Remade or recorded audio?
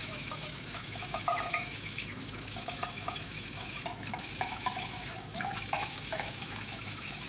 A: remade